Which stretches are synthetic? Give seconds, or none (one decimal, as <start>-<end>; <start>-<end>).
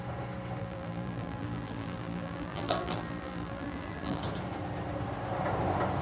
0.6-4.2